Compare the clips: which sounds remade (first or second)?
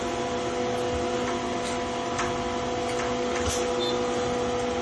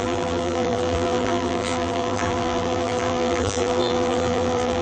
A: second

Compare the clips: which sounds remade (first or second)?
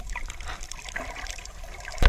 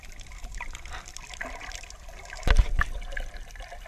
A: first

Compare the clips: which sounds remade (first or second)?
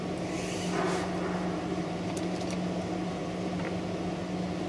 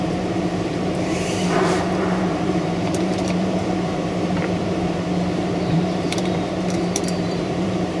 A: second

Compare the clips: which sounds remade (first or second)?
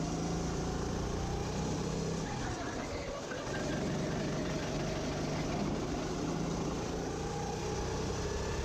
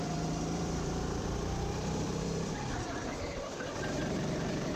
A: second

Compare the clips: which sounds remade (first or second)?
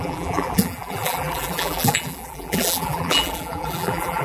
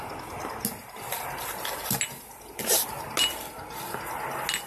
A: first